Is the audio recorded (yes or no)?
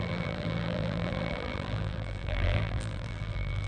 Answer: no